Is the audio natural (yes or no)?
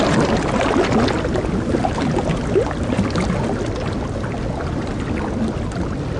yes